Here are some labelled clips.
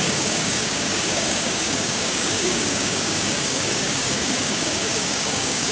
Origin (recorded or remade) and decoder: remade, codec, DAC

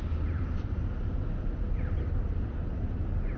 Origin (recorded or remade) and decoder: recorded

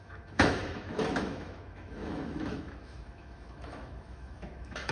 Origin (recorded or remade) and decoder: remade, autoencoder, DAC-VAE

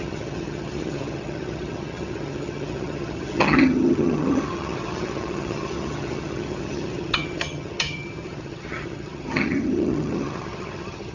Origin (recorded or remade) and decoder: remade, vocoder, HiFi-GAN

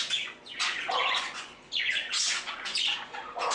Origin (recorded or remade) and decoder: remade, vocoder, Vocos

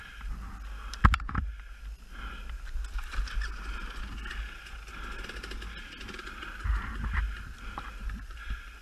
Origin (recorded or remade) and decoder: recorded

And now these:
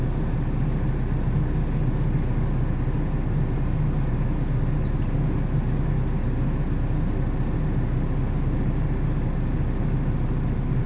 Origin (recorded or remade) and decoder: recorded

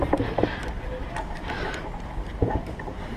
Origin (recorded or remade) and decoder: recorded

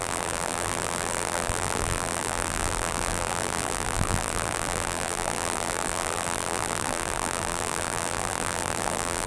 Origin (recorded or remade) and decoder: remade, vocoder, BigVGAN v2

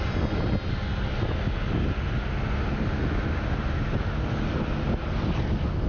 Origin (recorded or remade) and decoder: recorded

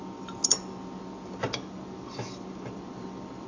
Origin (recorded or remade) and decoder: recorded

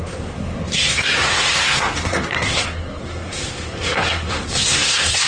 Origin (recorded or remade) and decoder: remade, codec, SNAC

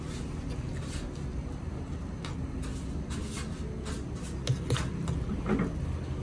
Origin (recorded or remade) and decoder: recorded